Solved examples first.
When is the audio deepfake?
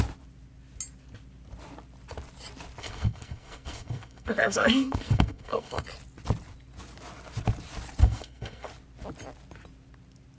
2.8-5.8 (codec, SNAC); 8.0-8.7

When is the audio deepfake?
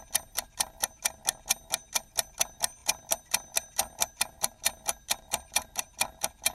0.0-6.5 (vocoder, BigVGAN v2)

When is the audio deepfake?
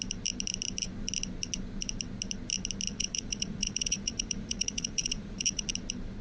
2.9-5.7 (vocoder, Vocos)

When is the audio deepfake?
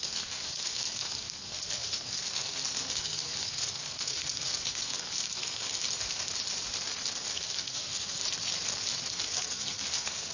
0.0-5.8 (codec, SNAC); 7.2-8.2; 9.1-10.3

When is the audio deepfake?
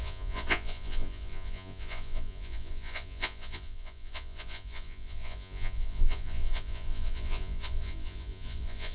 0.0-8.9 (vocoder, Vocos)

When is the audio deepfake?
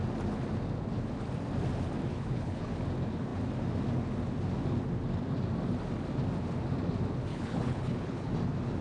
2.1-2.7 (codec, HILCodec); 7.3-8.3